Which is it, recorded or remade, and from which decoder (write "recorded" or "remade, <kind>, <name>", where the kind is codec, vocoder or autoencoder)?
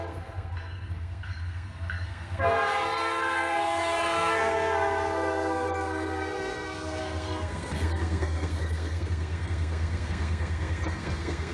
remade, codec, SNAC